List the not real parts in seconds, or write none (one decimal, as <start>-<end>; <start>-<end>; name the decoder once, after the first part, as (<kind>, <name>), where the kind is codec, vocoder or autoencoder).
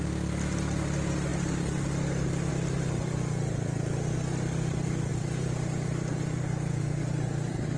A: none